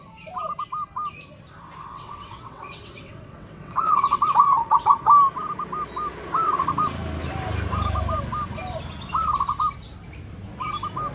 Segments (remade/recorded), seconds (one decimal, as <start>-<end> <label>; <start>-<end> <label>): 0.0-1.8 recorded; 1.8-5.1 remade; 5.1-11.1 recorded